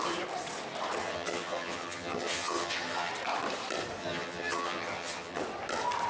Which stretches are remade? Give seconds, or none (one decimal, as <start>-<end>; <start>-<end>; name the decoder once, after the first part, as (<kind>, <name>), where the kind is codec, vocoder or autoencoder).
1.0-3.1 (vocoder, HiFi-GAN); 4.0-5.4

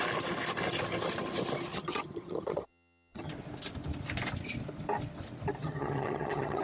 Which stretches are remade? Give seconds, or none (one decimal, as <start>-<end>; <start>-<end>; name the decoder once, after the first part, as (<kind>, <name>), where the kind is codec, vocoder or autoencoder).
1.7-3.3 (vocoder, HiFi-GAN); 5.6-6.6

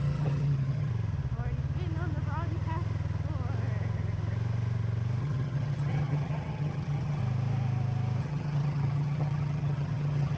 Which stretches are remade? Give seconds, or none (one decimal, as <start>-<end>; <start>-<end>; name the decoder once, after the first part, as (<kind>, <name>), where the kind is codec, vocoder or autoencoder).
0.0-0.9 (vocoder, HiFi-GAN); 5.2-7.2; 8.2-10.4

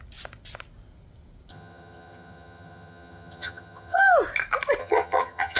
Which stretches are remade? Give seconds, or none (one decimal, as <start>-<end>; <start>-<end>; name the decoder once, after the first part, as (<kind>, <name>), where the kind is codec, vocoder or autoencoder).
1.5-4.0 (vocoder, HiFi-GAN); 4.8-5.6

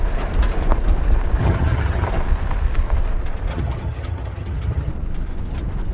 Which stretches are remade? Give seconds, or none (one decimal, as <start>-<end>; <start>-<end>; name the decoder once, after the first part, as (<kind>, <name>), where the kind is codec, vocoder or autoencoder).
1.4-2.1 (vocoder, HiFi-GAN); 3.5-4.9

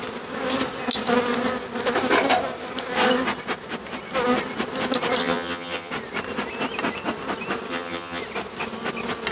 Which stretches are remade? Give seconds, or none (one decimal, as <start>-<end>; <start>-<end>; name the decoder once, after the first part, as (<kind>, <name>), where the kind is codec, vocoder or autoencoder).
5.2-5.9 (vocoder, HiFi-GAN); 7.7-8.2

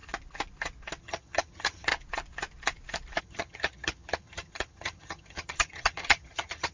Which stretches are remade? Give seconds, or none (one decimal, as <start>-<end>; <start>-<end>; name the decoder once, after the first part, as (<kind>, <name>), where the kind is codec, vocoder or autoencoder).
1.0-1.9 (vocoder, HiFi-GAN); 3.2-6.7

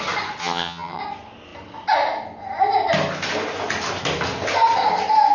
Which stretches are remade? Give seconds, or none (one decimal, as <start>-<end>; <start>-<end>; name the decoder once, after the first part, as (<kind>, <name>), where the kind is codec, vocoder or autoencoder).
0.4-1.0 (vocoder, HiFi-GAN)